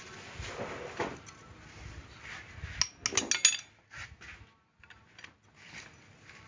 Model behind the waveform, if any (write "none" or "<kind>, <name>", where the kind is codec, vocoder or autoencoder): none